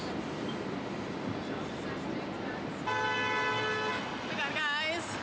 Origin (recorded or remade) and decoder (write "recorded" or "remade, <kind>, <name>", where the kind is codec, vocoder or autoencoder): recorded